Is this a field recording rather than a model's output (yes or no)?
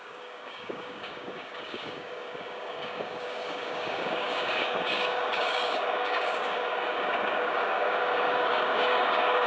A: no